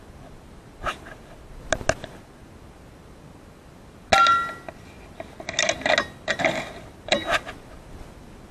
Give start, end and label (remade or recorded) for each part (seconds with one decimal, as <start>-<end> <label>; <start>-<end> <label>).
0.0-8.5 recorded